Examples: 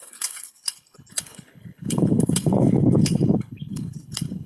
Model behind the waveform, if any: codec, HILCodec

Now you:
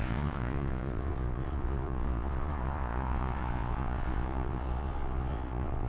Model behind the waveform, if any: vocoder, Vocos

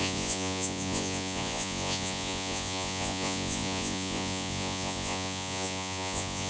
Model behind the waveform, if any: vocoder, Vocos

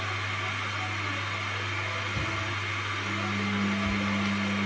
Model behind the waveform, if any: none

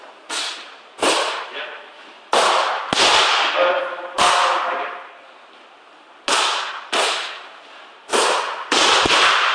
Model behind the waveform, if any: none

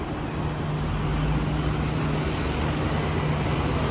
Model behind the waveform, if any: none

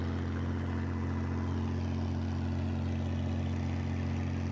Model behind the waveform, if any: none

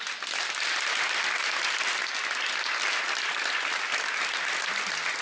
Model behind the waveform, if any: none